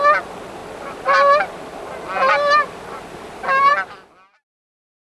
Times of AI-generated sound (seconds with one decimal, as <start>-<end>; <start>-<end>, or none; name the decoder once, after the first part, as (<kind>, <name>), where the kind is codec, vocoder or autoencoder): none